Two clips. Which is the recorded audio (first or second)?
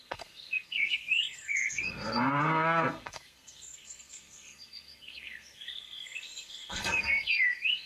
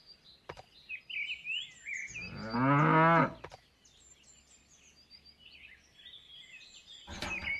second